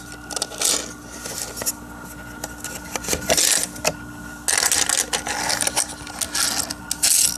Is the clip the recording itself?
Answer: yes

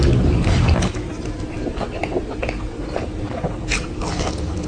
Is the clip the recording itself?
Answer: yes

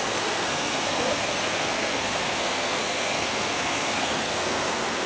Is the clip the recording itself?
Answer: no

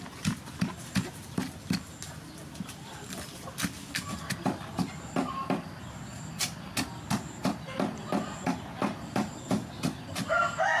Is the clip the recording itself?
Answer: yes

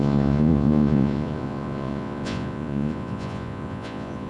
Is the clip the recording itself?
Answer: no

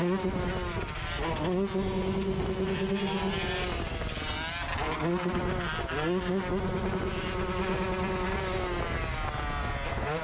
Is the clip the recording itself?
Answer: yes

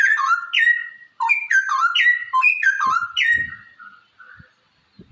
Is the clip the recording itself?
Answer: yes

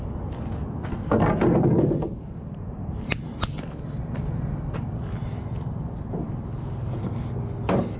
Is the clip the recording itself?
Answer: yes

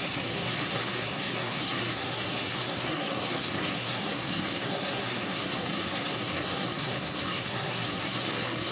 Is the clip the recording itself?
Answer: no